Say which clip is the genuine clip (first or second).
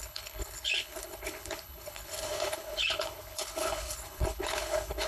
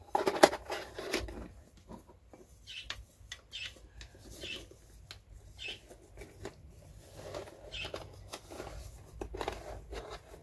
second